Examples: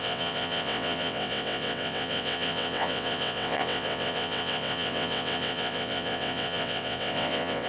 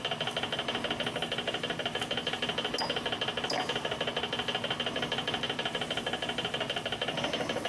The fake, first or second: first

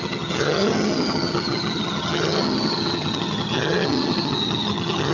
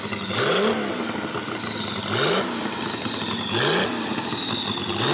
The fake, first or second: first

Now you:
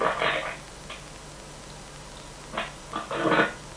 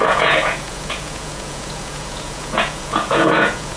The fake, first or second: second